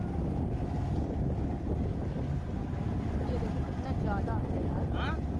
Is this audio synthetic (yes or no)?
no